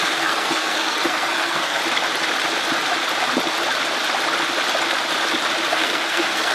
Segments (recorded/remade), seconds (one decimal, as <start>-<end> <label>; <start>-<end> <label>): 0.0-1.8 remade; 1.8-5.7 recorded; 5.7-6.5 remade